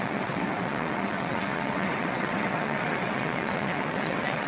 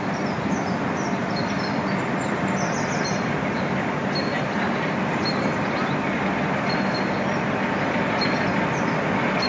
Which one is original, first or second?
second